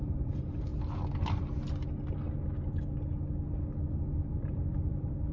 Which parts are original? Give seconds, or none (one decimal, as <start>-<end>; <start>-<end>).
0.7-3.9